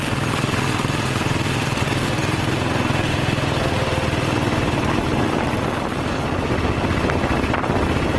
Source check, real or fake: real